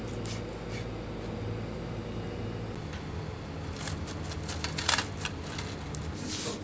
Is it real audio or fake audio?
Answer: real